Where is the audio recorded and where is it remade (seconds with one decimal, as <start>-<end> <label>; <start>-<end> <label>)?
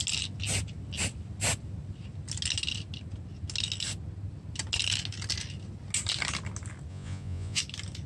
0.0-6.9 recorded; 6.9-7.6 remade; 7.6-8.1 recorded